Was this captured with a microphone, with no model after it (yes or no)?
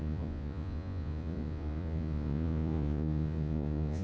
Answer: no